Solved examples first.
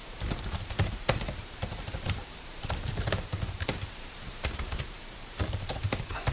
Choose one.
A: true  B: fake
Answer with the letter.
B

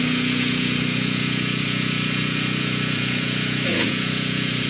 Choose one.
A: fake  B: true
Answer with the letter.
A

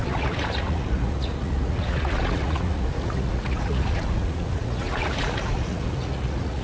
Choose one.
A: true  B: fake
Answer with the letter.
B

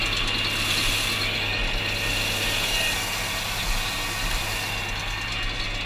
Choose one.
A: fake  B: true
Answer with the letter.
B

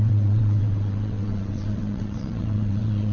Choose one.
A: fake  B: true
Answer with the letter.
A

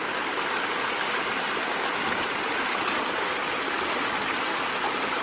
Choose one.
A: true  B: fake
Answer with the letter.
A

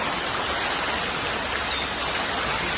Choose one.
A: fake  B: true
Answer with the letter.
B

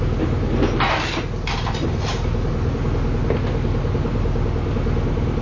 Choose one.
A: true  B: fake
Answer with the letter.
A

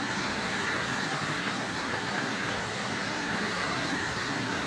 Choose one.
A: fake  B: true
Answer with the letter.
A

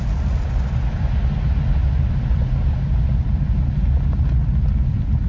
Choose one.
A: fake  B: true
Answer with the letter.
B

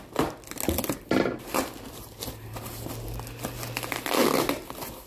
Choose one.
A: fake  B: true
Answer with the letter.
B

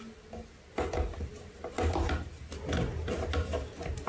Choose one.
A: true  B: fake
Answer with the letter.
A